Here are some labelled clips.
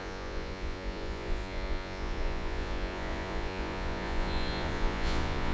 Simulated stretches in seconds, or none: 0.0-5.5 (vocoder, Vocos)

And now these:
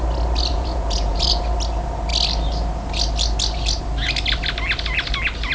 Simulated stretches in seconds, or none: 0.5-1.4 (vocoder, Vocos)

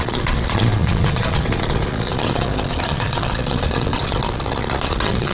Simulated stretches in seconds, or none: 0.0-5.3 (vocoder, Vocos)

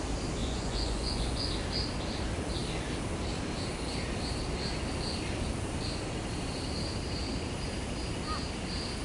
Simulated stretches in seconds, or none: 0.4-1.5 (vocoder, Vocos)

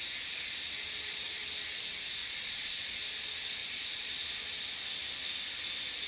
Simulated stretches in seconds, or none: 2.2-3.0 (vocoder, Vocos); 3.6-4.1

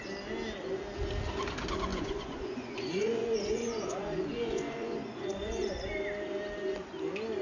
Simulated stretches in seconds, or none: 1.9-5.9 (vocoder, Vocos)

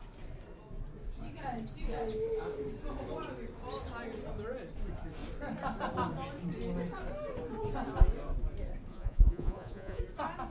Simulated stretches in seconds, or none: 8.9-10.0 (vocoder, Vocos)

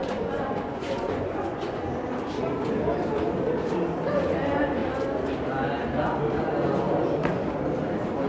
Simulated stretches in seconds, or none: 0.0-1.8 (vocoder, Vocos)